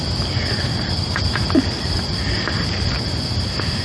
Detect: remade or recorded recorded